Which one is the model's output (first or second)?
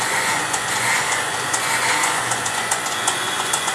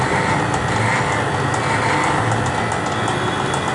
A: first